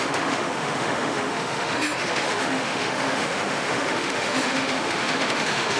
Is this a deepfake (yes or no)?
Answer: yes